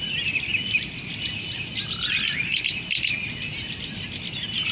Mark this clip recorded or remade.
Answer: recorded